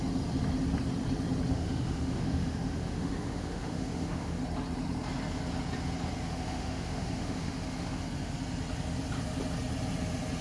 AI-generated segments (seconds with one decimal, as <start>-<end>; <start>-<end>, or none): 1.5-4.4; 6.3-8.0